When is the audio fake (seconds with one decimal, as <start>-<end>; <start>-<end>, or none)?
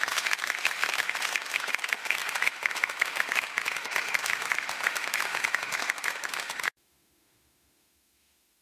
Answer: 0.0-8.6